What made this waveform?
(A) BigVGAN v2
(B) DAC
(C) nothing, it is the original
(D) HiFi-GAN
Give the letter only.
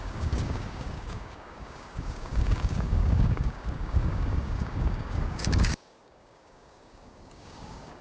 B